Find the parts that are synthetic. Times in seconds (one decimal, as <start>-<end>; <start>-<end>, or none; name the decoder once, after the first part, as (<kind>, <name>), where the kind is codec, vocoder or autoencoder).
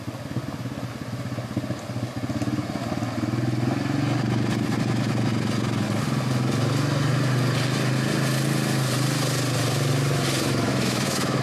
10.7-11.4 (autoencoder, DAC-VAE)